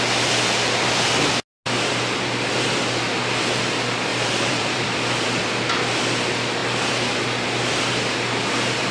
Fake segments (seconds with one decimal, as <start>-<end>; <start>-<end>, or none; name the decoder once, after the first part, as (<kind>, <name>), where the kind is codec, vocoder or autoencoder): 4.1-5.4 (vocoder, BigVGAN v2)